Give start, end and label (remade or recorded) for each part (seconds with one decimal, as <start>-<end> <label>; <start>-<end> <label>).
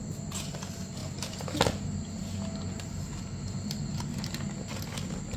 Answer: 0.0-5.4 recorded